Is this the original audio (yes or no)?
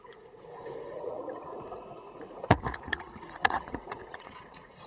no